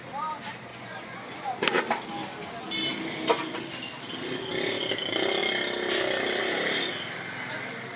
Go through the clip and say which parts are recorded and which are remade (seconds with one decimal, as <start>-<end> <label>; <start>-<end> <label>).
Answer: 0.0-0.7 recorded; 0.7-1.8 remade; 1.8-8.0 recorded